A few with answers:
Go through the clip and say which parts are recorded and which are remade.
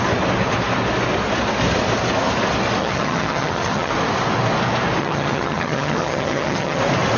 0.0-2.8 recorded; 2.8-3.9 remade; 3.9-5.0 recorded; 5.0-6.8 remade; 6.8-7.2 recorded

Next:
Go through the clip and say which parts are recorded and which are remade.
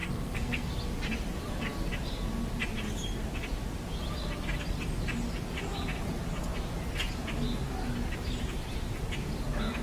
0.0-0.7 remade; 0.7-9.8 recorded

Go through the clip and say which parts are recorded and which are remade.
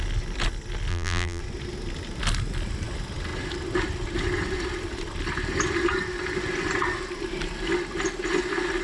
0.0-0.9 recorded; 0.9-1.4 remade; 1.4-8.8 recorded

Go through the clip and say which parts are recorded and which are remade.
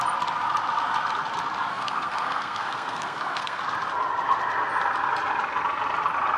0.0-1.7 recorded; 1.7-3.6 remade; 3.6-6.4 recorded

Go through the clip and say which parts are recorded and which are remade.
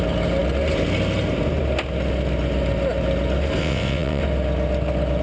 0.0-3.6 recorded; 3.6-4.2 remade; 4.2-5.2 recorded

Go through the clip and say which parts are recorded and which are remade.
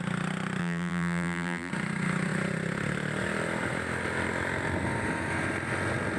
0.0-0.6 recorded; 0.6-1.7 remade; 1.7-6.2 recorded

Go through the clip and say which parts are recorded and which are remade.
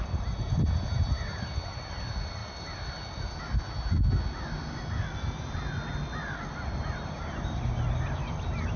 0.0-8.8 recorded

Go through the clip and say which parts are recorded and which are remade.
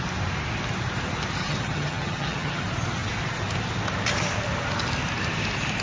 0.0-1.4 recorded; 1.4-2.6 remade; 2.6-5.8 recorded